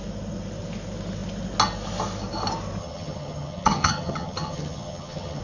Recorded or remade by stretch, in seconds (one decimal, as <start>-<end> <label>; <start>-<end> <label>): 0.0-2.8 recorded; 2.8-5.4 remade

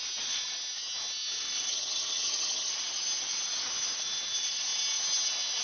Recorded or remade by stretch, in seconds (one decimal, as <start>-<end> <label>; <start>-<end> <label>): 0.0-1.7 recorded; 1.7-2.7 remade; 2.7-5.6 recorded

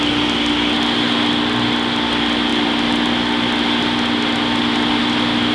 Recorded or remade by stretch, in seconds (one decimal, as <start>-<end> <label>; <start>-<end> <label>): 0.0-5.5 recorded

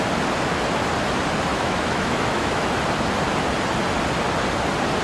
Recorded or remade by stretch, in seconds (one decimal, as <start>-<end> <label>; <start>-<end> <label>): 0.0-1.5 recorded; 1.5-2.7 remade; 2.7-5.0 recorded